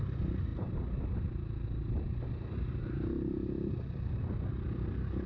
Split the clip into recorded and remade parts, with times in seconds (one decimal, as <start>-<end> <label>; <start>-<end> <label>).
0.0-2.8 recorded; 2.8-4.2 remade; 4.2-5.3 recorded